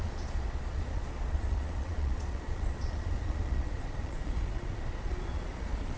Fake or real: fake